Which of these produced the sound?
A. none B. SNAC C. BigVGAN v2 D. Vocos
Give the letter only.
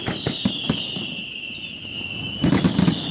A